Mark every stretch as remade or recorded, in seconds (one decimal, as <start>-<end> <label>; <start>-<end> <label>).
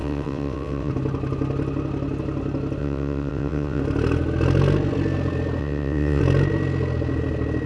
0.0-0.9 remade; 0.9-2.8 recorded; 2.8-3.8 remade; 3.8-5.6 recorded; 5.6-6.2 remade; 6.2-7.7 recorded